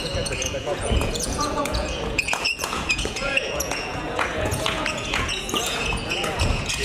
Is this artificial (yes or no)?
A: yes